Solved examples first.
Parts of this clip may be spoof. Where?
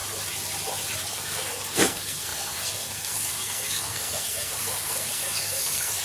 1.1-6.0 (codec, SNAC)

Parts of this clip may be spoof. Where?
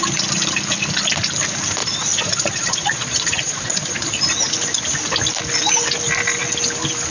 1.8-4.2 (vocoder, Vocos)